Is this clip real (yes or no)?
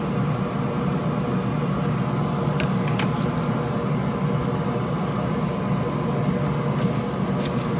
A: yes